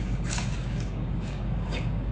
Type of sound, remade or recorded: remade